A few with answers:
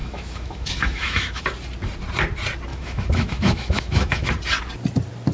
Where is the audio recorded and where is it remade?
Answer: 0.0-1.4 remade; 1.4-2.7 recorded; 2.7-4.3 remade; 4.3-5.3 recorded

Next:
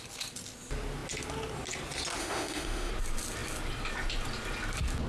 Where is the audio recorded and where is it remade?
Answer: 0.0-2.2 recorded; 2.2-2.9 remade; 2.9-5.1 recorded

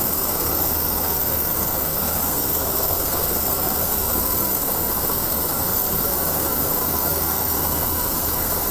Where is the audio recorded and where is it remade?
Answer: 0.0-8.7 remade

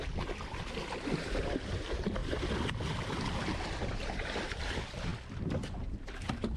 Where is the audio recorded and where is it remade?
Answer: 0.0-2.2 remade; 2.2-2.9 recorded; 2.9-6.6 remade

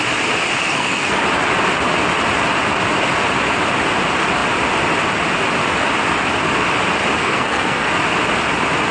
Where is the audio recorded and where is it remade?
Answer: 0.0-0.6 recorded; 0.6-1.2 remade; 1.2-7.2 recorded; 7.2-7.9 remade; 7.9-8.9 recorded